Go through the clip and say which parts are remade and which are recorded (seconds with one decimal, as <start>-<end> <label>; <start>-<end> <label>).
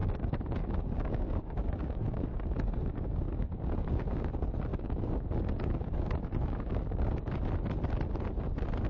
0.0-4.3 remade; 4.3-4.7 recorded; 4.7-7.3 remade; 7.3-8.9 recorded